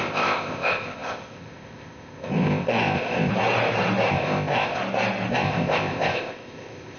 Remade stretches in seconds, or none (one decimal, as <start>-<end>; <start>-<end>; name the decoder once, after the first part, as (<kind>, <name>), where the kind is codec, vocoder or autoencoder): 0.0-3.3 (codec, ZipCodec); 4.1-4.8; 5.3-7.0